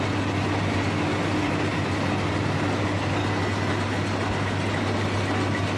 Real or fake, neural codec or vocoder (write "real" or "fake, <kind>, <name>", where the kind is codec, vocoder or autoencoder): real